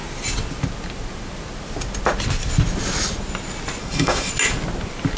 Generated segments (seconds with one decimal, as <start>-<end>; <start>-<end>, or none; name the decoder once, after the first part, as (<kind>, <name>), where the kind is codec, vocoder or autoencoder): 3.8-4.3 (autoencoder, DAC-VAE)